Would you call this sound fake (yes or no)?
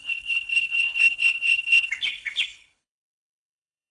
yes